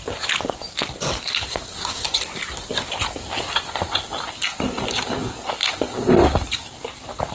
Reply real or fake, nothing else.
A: real